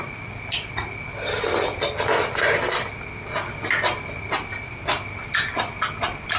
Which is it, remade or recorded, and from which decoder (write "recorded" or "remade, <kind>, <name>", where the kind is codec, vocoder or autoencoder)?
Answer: recorded